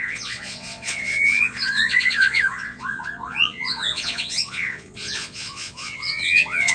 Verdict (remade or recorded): remade